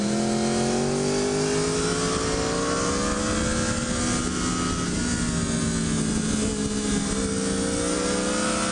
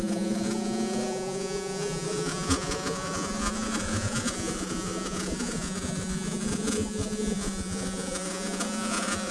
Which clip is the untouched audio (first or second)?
first